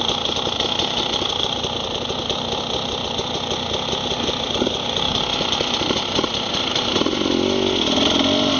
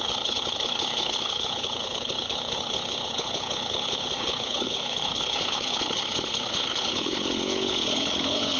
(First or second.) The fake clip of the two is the second